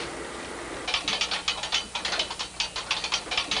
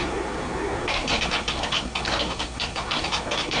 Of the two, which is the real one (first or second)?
first